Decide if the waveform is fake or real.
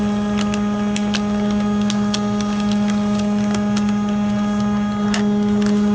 real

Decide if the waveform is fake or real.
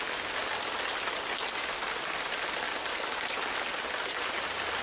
real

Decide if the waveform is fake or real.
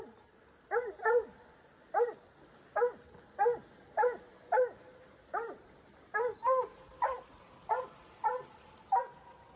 real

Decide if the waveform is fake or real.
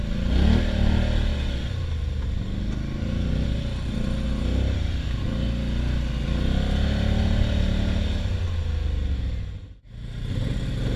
real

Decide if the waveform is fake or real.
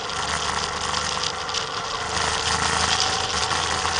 real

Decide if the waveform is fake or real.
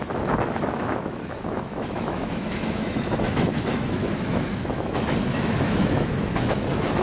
fake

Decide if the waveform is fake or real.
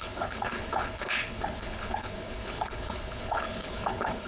fake